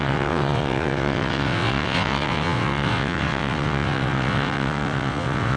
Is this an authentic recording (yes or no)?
no